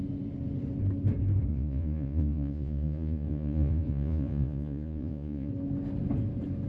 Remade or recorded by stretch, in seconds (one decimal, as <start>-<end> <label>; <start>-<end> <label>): 0.0-1.5 recorded; 1.5-5.5 remade; 5.5-6.7 recorded

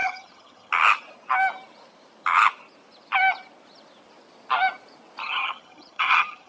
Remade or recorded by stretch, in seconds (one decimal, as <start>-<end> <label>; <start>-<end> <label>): 0.0-0.7 remade; 0.7-5.2 recorded; 5.2-6.5 remade